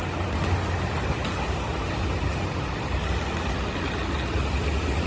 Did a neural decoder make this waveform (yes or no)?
no